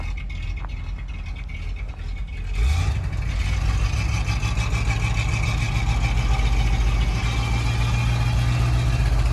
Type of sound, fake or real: real